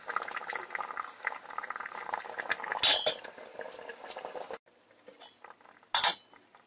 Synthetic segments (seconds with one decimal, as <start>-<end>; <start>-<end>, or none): none